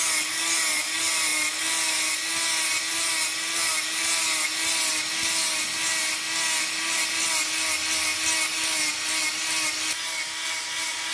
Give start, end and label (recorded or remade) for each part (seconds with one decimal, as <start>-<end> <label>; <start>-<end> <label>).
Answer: 0.0-11.1 recorded